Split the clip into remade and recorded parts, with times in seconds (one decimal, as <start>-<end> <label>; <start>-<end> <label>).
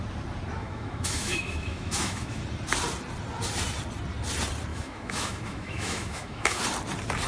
0.0-0.6 recorded; 0.6-2.4 remade; 2.4-4.7 recorded; 4.7-6.6 remade; 6.6-7.3 recorded